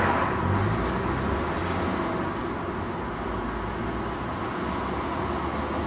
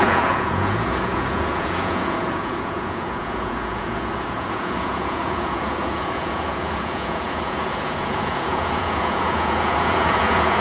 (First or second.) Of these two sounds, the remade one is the second